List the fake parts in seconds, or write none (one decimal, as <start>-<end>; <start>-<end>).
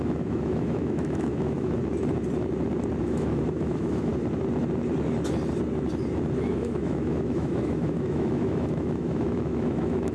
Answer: 0.0-1.8; 3.0-4.1; 6.5-10.1